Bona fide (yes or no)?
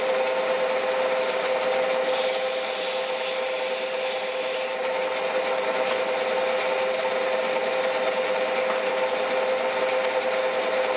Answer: yes